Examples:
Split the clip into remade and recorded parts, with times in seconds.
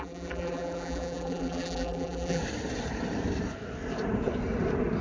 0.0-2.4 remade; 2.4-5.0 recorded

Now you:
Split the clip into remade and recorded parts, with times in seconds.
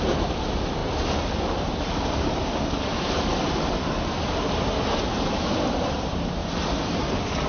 0.0-6.4 remade; 6.4-6.9 recorded; 6.9-7.5 remade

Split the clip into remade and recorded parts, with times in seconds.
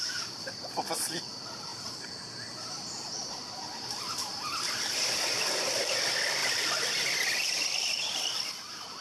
0.0-9.0 remade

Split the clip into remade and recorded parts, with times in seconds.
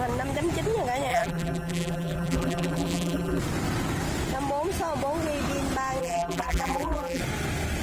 0.0-1.1 recorded; 1.1-3.4 remade; 3.4-6.0 recorded; 6.0-7.2 remade; 7.2-7.8 recorded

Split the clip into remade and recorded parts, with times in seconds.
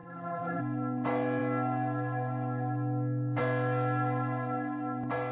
0.0-0.6 remade; 0.6-5.3 recorded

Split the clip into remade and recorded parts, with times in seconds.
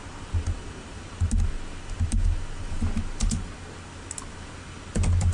0.0-5.3 recorded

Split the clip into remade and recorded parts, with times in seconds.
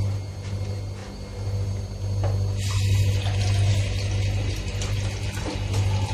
0.0-6.1 recorded